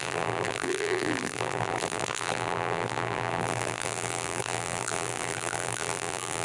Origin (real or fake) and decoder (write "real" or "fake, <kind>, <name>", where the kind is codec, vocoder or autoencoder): fake, vocoder, BigVGAN v2